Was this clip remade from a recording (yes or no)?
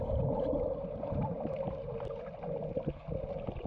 no